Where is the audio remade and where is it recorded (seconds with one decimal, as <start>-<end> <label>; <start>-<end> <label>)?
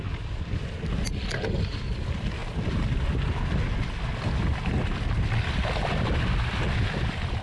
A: 0.0-7.4 recorded